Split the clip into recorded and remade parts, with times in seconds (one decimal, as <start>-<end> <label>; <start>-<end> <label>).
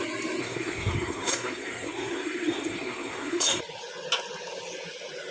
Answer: 0.0-0.4 recorded; 0.4-3.6 remade; 3.6-5.3 recorded